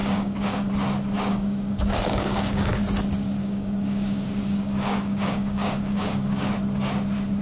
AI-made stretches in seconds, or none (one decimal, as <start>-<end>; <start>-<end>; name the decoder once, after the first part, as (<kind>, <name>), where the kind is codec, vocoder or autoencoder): 0.0-0.7 (codec, DAC); 1.3-2.8; 3.4-6.5